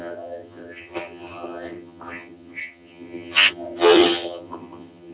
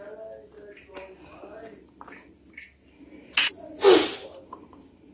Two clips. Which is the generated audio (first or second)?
first